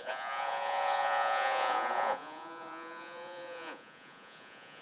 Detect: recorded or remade remade